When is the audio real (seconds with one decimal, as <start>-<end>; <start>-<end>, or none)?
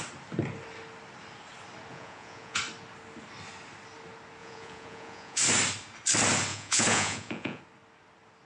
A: 0.0-1.9; 2.6-4.4; 5.4-6.5; 7.6-8.5